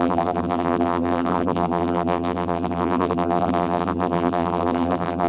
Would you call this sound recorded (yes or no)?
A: no